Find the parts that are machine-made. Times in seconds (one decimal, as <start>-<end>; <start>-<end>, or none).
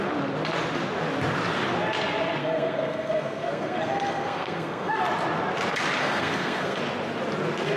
2.4-5.0; 6.0-6.8